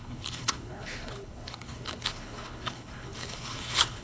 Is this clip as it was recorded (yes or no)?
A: no